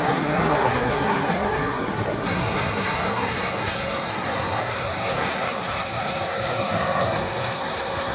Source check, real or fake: fake